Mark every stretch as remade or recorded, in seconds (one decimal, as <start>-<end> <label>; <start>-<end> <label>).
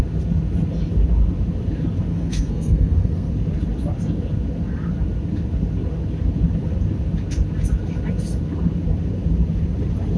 0.0-2.1 recorded; 2.1-3.3 remade; 3.3-10.2 recorded